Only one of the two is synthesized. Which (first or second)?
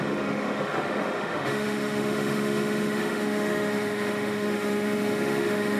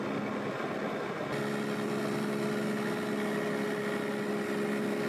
first